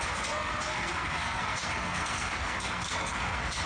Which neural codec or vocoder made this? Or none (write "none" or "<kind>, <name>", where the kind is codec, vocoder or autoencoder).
codec, SNAC